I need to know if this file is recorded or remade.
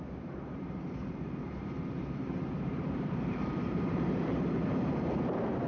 remade